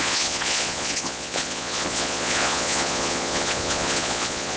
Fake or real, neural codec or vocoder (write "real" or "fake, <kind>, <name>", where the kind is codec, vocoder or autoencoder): fake, vocoder, Vocos